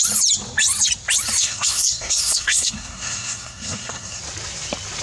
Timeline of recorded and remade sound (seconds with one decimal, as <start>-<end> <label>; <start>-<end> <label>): 0.0-1.4 recorded; 1.4-4.2 remade; 4.2-5.0 recorded